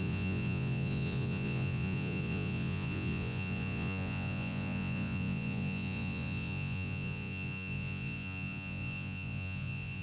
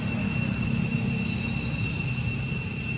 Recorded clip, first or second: second